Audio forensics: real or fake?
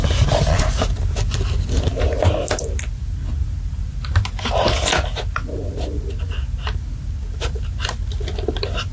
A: real